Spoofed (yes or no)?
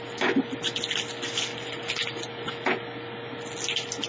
no